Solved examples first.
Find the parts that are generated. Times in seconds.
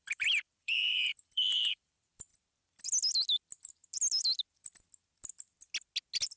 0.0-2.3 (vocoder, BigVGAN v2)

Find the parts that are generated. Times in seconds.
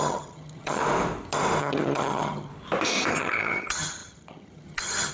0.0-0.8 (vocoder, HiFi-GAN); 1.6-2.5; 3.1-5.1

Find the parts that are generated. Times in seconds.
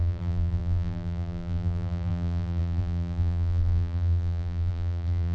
0.0-5.3 (vocoder, BigVGAN v2)